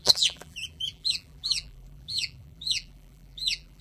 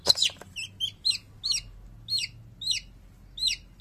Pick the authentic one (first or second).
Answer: second